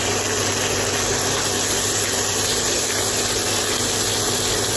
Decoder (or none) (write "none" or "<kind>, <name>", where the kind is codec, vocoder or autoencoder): none